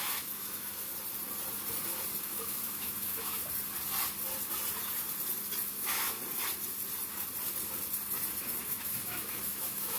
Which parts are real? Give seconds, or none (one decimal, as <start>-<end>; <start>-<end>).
0.9-2.2; 3.4-5.7; 6.2-8.6